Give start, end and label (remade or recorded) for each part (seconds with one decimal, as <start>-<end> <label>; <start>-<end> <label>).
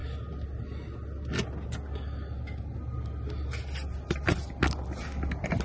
0.0-5.6 recorded